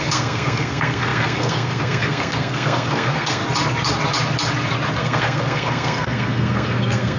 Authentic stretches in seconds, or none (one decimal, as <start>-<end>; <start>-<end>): 3.4-5.0